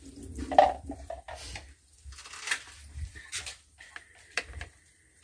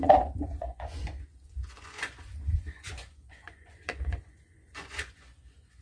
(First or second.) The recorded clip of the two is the first